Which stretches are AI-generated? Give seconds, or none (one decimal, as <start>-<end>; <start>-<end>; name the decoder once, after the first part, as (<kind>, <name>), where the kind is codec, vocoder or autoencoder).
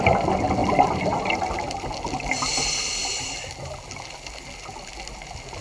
none